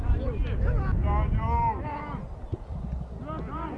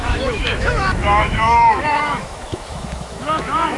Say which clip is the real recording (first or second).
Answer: first